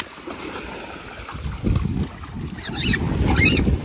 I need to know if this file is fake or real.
real